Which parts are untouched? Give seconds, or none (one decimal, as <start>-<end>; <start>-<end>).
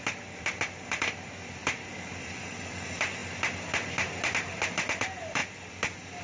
5.4-6.2